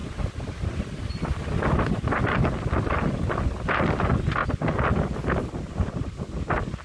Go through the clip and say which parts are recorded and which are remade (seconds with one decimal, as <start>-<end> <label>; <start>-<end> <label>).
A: 0.0-6.8 recorded